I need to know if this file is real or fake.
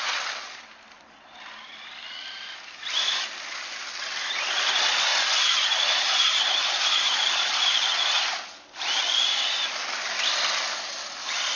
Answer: real